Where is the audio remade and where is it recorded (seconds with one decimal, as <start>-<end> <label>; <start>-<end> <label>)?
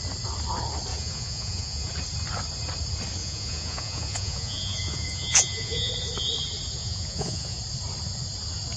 0.0-0.9 recorded; 0.9-1.9 remade; 1.9-3.2 recorded; 3.2-5.9 remade; 5.9-6.8 recorded; 6.8-7.6 remade; 7.6-8.8 recorded